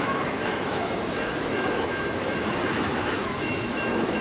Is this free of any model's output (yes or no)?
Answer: no